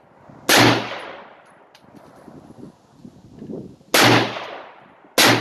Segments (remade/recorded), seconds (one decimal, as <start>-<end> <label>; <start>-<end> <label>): 0.0-5.4 recorded